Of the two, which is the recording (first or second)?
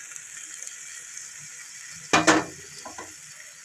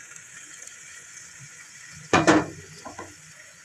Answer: first